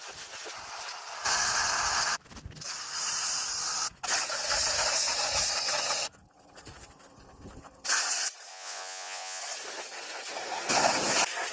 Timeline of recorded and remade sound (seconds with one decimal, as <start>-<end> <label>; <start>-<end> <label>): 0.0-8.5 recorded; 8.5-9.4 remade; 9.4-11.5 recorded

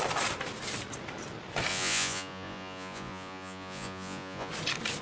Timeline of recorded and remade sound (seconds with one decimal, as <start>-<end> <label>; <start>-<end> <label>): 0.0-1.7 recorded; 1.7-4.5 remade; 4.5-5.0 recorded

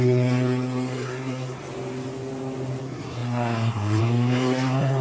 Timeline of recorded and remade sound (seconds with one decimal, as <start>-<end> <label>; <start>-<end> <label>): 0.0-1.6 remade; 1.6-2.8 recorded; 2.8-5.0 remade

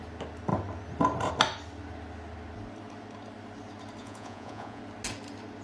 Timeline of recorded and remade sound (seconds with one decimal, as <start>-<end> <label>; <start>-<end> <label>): 0.0-4.0 recorded; 4.0-4.8 remade; 4.8-5.6 recorded

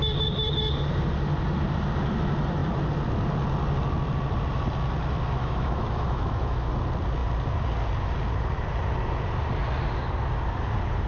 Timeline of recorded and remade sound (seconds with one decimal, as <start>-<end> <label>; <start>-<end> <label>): 0.0-5.4 recorded; 5.4-6.7 remade; 6.7-11.1 recorded

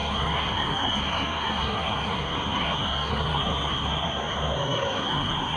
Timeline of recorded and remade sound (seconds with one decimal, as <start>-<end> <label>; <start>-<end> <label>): 0.0-5.6 remade

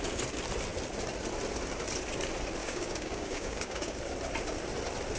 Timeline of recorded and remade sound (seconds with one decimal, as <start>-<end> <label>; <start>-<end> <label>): 0.0-2.6 recorded; 2.6-4.0 remade; 4.0-5.2 recorded